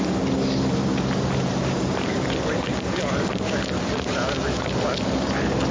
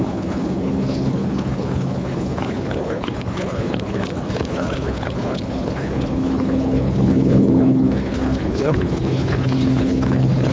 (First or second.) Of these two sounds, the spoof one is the second